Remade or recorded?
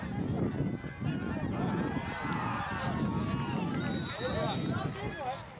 recorded